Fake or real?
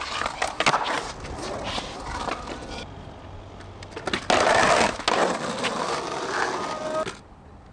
real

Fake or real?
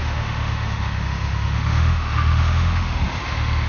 fake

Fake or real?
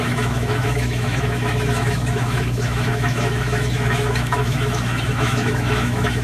fake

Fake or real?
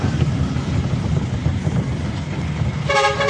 fake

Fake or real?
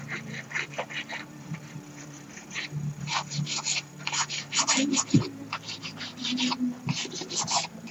fake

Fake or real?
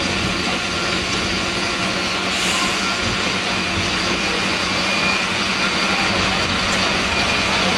fake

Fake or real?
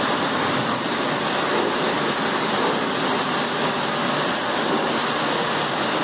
real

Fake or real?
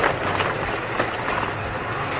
real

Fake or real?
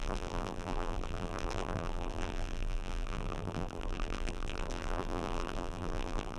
fake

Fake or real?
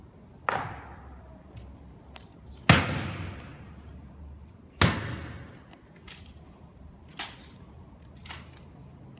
real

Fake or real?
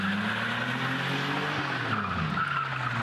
real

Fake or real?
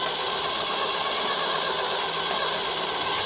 real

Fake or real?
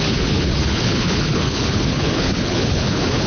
fake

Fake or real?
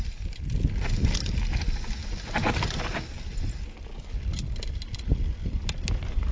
real